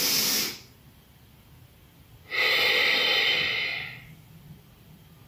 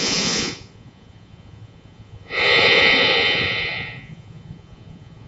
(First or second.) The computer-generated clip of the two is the second